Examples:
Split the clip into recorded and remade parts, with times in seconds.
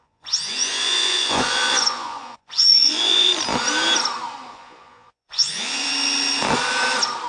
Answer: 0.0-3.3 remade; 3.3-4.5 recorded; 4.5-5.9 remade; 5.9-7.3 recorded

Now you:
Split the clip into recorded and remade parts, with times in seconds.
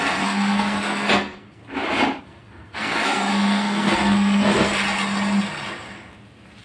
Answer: 0.0-1.6 remade; 1.6-2.2 recorded; 2.2-4.7 remade; 4.7-6.6 recorded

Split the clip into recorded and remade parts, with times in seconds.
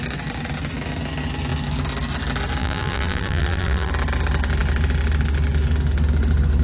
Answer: 0.0-2.6 recorded; 2.6-3.9 remade; 3.9-6.6 recorded